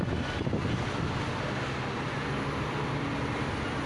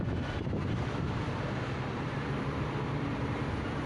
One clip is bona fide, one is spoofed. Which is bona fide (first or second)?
first